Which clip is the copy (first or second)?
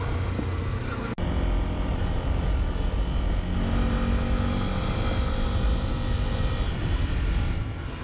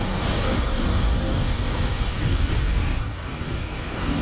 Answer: second